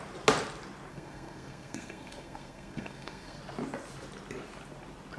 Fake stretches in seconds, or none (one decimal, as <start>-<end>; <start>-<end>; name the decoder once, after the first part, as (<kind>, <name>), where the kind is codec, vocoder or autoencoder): 0.9-3.4 (codec, SNAC)